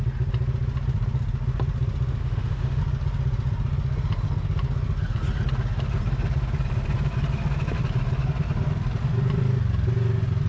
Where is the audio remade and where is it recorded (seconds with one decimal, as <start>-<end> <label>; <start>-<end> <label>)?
0.0-2.2 recorded; 2.2-2.8 remade; 2.8-10.5 recorded